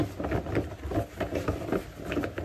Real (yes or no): yes